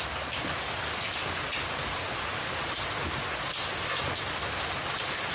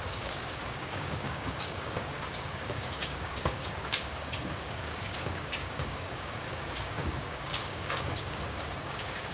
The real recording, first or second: first